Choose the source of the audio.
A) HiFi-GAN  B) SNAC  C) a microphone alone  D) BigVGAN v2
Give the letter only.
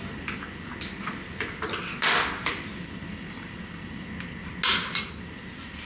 C